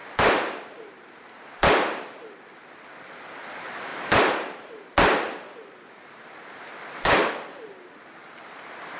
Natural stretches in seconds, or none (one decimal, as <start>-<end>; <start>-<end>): 0.0-9.0